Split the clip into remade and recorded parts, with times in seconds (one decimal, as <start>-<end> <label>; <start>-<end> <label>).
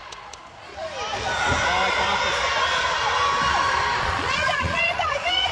0.0-0.7 remade; 0.7-4.0 recorded; 4.0-5.5 remade